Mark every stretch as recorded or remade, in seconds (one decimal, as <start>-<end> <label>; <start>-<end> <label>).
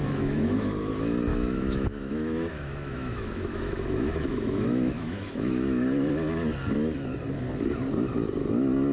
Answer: 0.0-0.9 remade; 0.9-1.3 recorded; 1.3-6.1 remade; 6.1-8.9 recorded